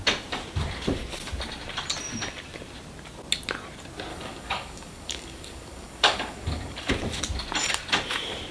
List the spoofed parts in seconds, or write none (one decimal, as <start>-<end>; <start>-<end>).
4.1-6.9